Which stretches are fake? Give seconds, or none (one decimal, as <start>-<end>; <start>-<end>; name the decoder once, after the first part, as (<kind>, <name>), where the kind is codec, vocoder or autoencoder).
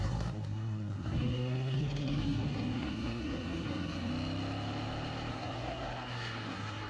0.0-4.1 (codec, SNAC); 5.3-6.9